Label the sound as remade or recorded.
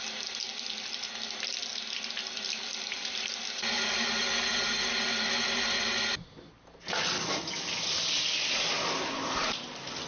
recorded